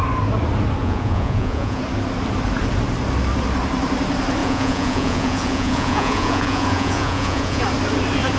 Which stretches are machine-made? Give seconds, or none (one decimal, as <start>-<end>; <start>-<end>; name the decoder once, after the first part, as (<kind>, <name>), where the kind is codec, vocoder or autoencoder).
0.8-1.8 (vocoder, Vocos); 4.4-7.6

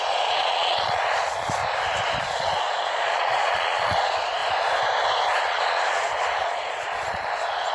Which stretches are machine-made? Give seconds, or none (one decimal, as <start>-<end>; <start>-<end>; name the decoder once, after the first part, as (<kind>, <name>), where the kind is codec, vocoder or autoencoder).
0.0-1.6 (vocoder, Vocos); 2.2-4.4; 5.4-7.7

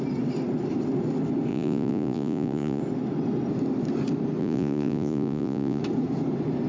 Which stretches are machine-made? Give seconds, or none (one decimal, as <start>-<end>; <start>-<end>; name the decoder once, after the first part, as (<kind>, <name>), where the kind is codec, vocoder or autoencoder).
1.5-2.8 (vocoder, Vocos); 4.4-5.8